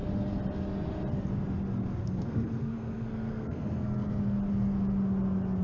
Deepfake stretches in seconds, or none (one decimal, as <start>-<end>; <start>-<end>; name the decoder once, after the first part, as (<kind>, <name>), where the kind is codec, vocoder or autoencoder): 1.8-4.1 (codec, SNAC)

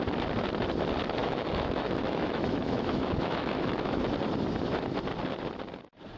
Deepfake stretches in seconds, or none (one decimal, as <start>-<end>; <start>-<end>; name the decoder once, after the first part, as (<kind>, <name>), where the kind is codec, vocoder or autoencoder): 1.2-4.0 (autoencoder, DAC-VAE)

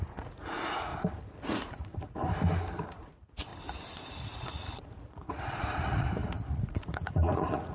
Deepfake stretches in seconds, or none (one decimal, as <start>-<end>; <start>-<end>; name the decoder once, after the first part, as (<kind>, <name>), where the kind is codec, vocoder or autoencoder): 0.0-0.9 (vocoder, Vocos); 1.4-2.2; 2.7-3.5; 4.2-7.7

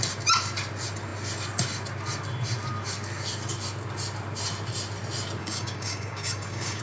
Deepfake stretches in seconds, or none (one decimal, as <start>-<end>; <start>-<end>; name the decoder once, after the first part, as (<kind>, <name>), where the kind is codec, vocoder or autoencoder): 5.4-6.8 (codec, DAC)

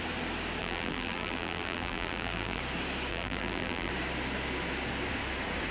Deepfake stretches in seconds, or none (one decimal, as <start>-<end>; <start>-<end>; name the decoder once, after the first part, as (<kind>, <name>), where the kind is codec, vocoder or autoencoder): 0.6-2.6 (vocoder, BigVGAN v2); 3.1-3.9

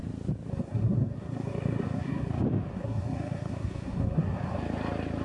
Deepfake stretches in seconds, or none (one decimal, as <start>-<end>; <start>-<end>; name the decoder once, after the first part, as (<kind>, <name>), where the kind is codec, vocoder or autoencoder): 0.5-2.3 (codec, SNAC); 2.7-4.6